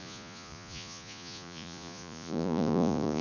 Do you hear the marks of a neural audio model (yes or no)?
yes